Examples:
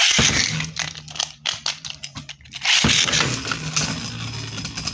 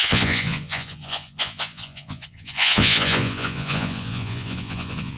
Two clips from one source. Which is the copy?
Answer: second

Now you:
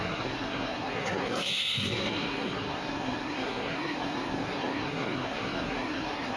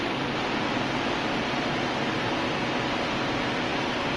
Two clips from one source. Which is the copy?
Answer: first